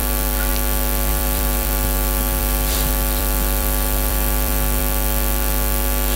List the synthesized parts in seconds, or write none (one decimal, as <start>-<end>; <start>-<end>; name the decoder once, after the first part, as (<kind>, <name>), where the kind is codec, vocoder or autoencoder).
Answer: 1.1-4.8 (vocoder, BigVGAN v2)